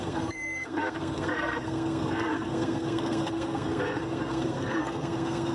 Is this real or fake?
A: fake